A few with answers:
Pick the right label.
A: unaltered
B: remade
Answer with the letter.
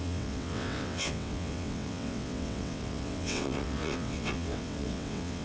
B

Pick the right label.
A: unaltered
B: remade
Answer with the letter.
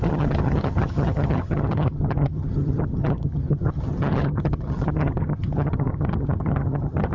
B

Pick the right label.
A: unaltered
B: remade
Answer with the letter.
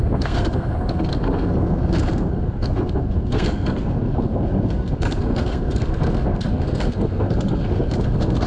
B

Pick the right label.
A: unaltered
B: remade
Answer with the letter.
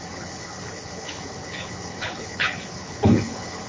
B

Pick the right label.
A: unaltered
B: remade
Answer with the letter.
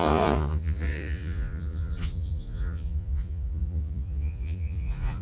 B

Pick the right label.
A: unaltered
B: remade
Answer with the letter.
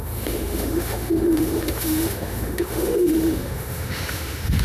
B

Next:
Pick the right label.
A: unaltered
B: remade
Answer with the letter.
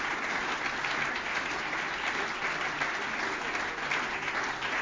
A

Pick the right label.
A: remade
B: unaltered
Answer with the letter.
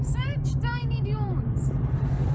A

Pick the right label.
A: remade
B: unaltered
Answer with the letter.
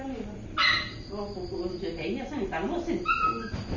B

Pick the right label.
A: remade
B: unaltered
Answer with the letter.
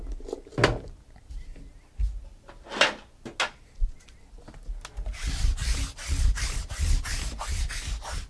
B